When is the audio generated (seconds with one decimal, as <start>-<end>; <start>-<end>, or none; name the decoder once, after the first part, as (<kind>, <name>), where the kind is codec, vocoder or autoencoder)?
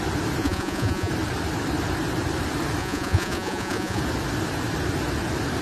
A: 0.4-1.1 (vocoder, Vocos); 2.8-4.0